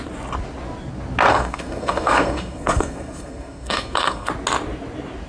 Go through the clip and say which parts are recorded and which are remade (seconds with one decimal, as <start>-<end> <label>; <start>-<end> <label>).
0.0-1.3 recorded; 1.3-4.3 remade; 4.3-5.3 recorded